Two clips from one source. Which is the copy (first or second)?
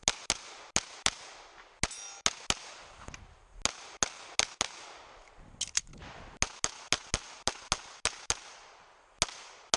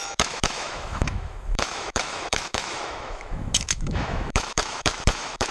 second